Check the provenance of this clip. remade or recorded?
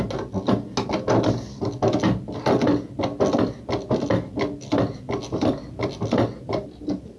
recorded